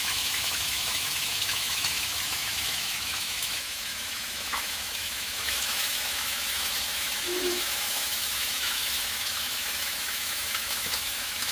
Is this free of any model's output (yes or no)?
no